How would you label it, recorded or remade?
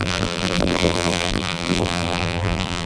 remade